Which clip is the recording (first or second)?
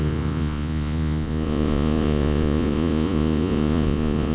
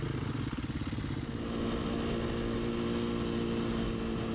second